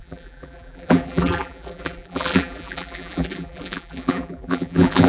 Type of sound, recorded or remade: remade